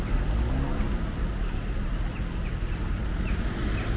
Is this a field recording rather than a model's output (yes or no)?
yes